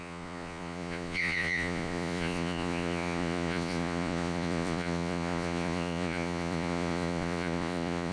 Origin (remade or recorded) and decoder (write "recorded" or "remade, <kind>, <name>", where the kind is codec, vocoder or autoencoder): remade, vocoder, Vocos